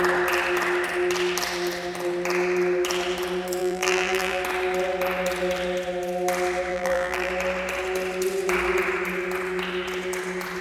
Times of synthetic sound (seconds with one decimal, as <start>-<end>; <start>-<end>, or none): 3.6-4.4; 6.7-7.3